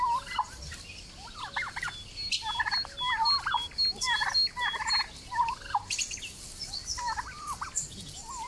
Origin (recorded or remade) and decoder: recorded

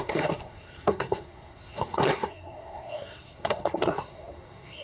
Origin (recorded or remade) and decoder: remade, codec, SNAC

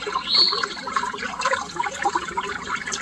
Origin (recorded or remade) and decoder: recorded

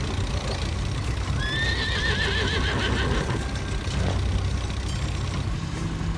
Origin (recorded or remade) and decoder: recorded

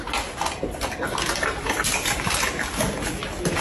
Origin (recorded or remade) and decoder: recorded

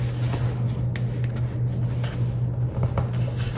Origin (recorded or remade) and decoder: recorded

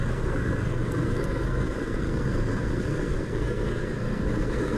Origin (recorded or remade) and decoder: remade, codec, SNAC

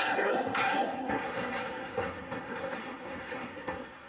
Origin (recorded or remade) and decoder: remade, codec, SNAC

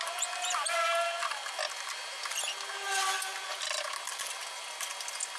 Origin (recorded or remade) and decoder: recorded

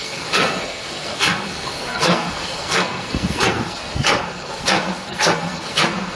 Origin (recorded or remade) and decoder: remade, codec, SNAC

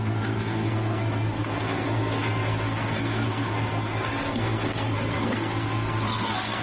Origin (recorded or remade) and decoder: remade, codec, SNAC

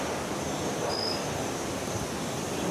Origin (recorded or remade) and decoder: recorded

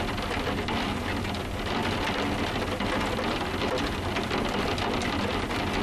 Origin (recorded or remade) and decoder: recorded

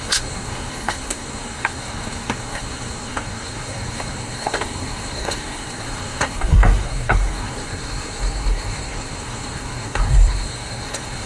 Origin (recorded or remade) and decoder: remade, codec, SNAC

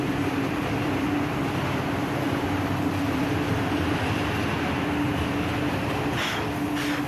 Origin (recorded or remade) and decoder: recorded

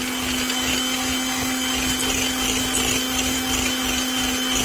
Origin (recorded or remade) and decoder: recorded